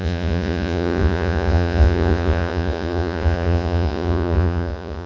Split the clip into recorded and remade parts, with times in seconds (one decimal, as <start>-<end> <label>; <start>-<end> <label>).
0.0-5.1 remade